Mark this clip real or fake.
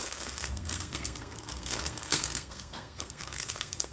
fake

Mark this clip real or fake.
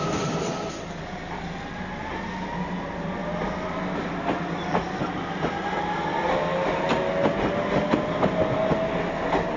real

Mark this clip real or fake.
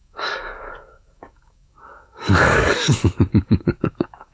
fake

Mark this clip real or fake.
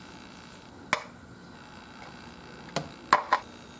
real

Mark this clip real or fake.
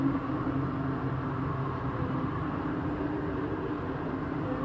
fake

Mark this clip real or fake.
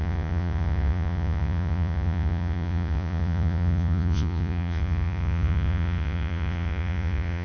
fake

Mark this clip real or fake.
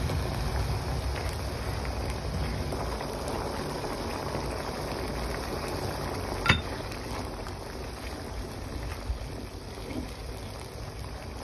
real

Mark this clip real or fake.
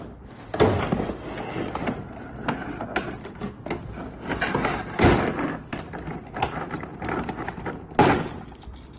real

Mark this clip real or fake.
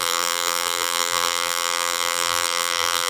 fake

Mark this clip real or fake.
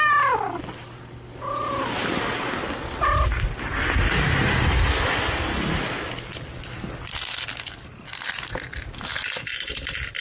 real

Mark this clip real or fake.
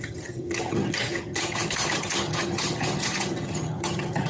fake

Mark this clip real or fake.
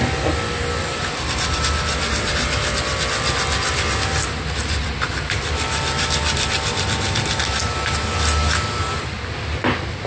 real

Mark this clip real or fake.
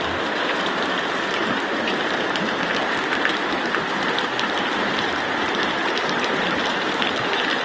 real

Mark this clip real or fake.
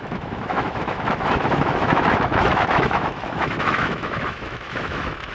fake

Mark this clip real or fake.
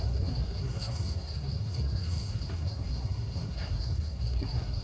fake